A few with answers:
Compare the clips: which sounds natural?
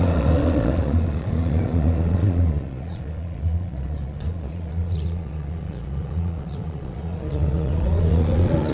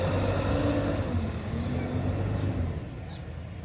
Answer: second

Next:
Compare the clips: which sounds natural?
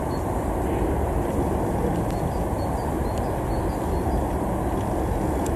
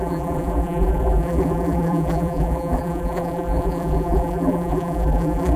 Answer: first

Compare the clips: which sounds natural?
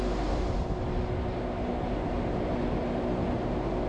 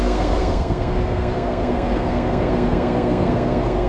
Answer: first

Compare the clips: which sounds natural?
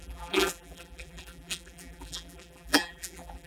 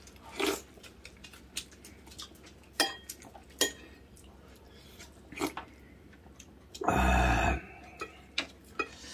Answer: second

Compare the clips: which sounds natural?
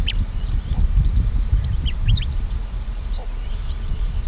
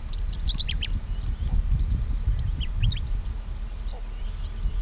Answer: second